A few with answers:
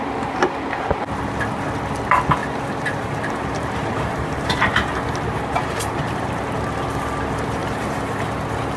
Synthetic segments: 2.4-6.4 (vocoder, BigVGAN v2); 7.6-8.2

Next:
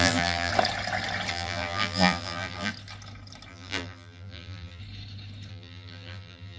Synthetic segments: 0.0-0.5 (vocoder, BigVGAN v2); 1.3-2.7; 3.5-4.8; 5.5-6.6

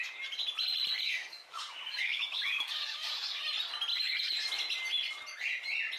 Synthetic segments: 1.0-3.4 (codec, DAC)

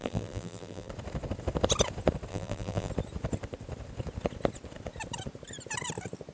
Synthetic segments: 0.0-0.9 (vocoder, BigVGAN v2); 2.3-2.9